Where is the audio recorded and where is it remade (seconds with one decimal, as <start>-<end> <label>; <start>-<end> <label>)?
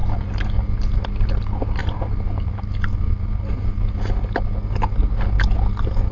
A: 0.0-6.1 recorded